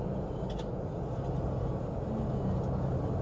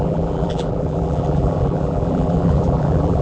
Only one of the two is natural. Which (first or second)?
first